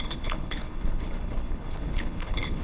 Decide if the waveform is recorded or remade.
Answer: remade